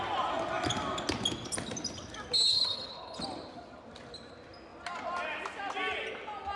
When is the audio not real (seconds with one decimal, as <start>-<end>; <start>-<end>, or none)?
2.5-3.2

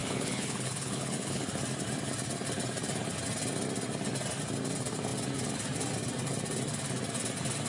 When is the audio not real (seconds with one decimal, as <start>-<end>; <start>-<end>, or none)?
0.0-1.5